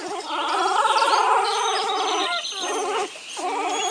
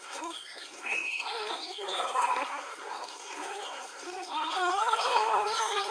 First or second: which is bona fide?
first